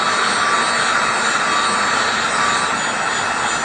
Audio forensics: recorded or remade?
recorded